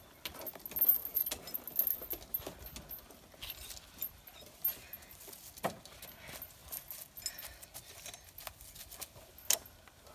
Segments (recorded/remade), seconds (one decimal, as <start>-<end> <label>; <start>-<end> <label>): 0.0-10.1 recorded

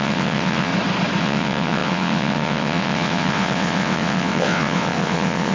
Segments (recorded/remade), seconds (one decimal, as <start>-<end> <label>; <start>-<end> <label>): 0.0-0.7 remade; 0.7-1.2 recorded; 1.2-5.5 remade

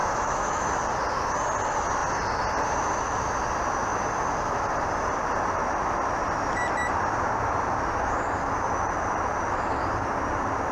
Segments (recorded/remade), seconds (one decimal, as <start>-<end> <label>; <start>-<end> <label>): 0.0-0.7 remade; 0.7-10.7 recorded